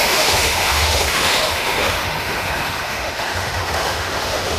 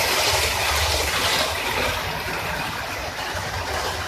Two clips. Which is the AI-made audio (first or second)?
first